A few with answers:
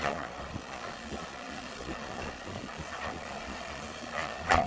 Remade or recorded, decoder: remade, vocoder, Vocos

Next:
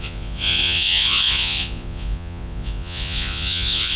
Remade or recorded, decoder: remade, vocoder, Vocos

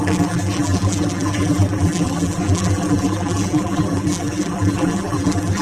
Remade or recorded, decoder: remade, vocoder, BigVGAN v2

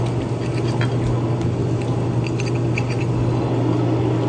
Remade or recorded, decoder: recorded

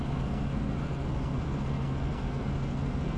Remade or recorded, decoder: remade, codec, SNAC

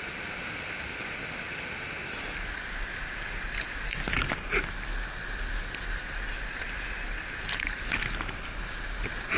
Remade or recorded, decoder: recorded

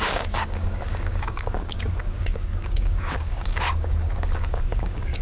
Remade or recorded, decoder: remade, codec, DAC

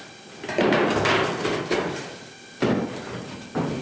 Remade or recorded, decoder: recorded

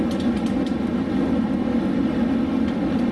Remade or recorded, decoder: recorded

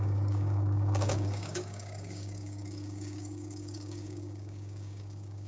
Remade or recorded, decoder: remade, codec, DAC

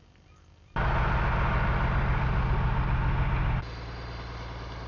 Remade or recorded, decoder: recorded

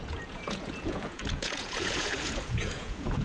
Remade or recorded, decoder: remade, vocoder, Vocos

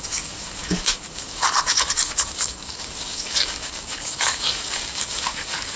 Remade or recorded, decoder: remade, codec, DAC